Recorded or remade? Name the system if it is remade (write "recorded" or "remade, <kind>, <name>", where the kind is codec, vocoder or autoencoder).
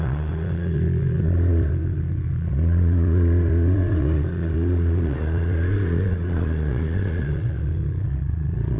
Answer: remade, vocoder, Vocos